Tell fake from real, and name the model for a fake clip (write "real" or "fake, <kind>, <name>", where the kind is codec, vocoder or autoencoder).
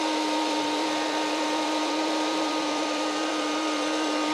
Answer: fake, vocoder, BigVGAN v2